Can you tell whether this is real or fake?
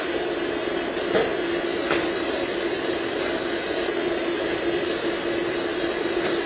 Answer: real